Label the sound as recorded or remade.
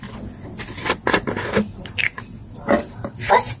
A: recorded